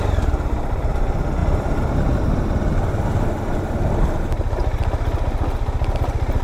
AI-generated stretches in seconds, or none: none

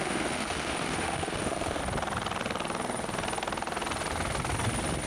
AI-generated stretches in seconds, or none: 0.0-1.8 (autoencoder, DAC-VAE)